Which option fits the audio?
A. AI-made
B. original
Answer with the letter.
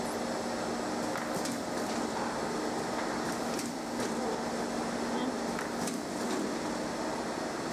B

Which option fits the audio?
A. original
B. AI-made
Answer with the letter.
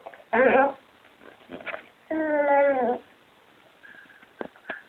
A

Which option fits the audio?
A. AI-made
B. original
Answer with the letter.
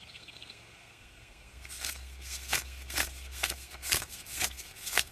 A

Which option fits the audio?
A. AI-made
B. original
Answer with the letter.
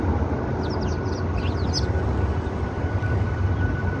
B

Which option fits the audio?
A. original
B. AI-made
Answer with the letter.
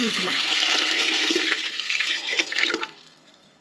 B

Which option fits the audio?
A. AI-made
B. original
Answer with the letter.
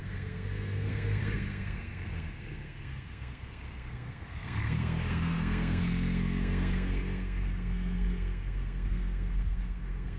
A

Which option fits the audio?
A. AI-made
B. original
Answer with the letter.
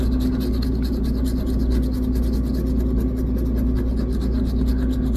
B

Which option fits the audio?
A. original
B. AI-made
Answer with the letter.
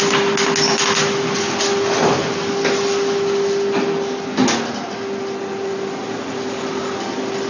A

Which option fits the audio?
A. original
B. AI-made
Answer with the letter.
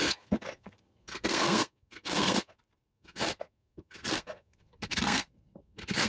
B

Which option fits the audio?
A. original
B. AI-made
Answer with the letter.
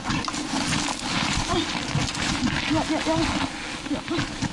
A